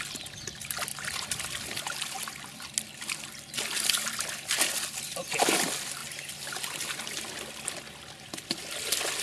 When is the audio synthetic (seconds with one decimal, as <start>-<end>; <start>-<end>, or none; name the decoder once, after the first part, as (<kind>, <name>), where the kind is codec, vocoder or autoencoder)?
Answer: none